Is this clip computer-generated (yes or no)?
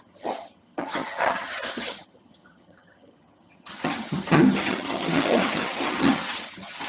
yes